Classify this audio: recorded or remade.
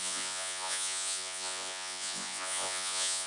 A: remade